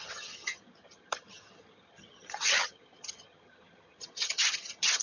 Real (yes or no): no